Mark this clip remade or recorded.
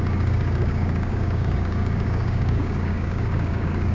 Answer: remade